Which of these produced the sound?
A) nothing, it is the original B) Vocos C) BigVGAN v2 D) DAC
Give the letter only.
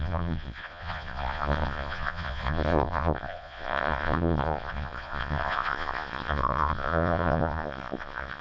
B